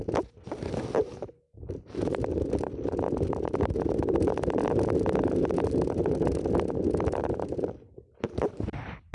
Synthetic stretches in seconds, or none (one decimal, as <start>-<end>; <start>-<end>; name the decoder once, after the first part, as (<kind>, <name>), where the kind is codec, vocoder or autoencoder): 1.0-2.2 (vocoder, BigVGAN v2); 7.1-7.6